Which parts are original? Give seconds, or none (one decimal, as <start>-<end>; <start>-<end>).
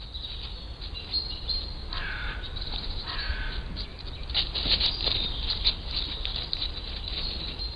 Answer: 0.0-7.8